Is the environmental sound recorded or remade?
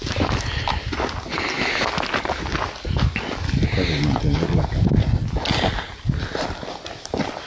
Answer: recorded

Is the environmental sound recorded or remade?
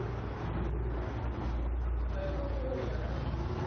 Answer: recorded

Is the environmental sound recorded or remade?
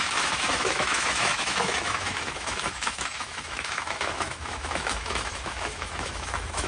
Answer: remade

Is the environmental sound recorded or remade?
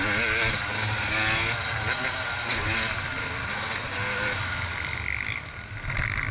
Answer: recorded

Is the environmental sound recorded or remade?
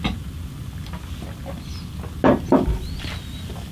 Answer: recorded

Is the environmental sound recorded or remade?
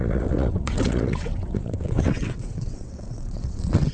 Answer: remade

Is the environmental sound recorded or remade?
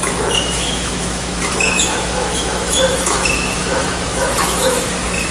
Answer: remade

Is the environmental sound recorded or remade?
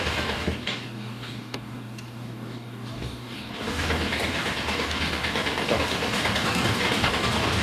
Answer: remade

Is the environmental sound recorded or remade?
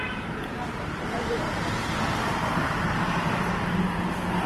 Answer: remade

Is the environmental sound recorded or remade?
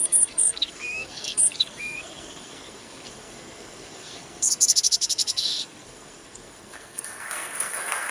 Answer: remade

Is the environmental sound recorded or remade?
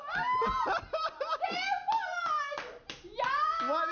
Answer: recorded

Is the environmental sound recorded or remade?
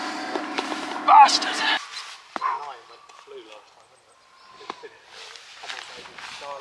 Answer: recorded